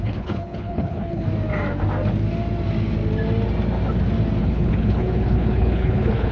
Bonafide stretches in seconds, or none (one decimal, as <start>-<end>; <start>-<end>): 1.3-4.4